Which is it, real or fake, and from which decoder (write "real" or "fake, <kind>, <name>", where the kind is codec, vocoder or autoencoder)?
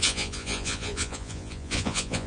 fake, vocoder, Vocos